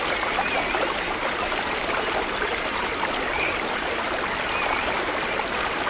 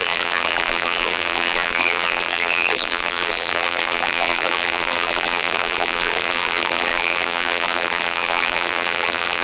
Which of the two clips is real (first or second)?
first